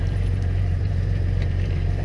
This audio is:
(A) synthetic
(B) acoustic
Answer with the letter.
A